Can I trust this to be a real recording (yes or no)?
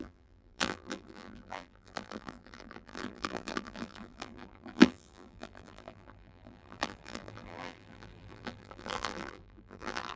no